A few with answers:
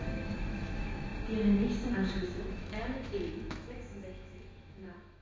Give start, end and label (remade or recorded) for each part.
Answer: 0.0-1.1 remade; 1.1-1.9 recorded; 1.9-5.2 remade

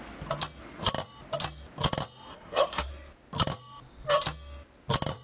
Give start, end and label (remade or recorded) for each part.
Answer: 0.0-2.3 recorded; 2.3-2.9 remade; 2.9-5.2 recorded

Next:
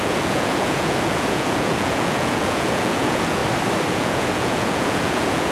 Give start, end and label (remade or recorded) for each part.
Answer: 0.0-3.4 remade; 3.4-3.9 recorded; 3.9-5.5 remade

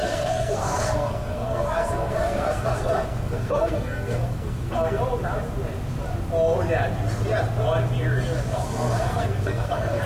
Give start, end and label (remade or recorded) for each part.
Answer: 0.0-5.0 remade; 5.0-8.5 recorded; 8.5-10.1 remade